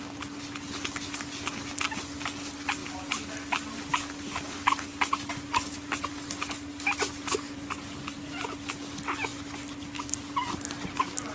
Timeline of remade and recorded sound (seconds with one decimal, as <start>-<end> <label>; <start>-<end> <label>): 0.0-11.3 recorded